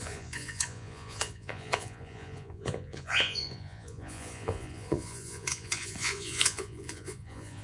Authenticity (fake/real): fake